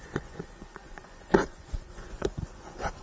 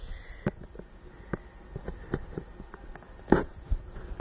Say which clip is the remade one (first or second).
first